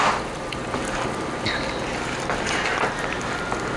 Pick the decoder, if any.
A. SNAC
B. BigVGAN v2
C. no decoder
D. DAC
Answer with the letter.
C